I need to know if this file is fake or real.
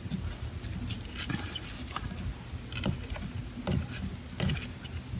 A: real